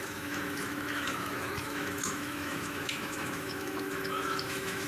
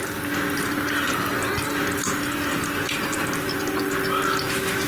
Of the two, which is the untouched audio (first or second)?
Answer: second